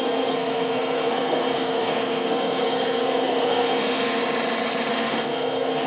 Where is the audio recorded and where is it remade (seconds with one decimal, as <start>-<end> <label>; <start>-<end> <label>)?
0.0-4.2 remade; 4.2-4.9 recorded; 4.9-5.9 remade